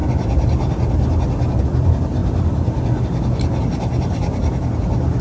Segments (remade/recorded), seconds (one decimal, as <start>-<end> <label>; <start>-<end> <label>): 0.0-5.2 recorded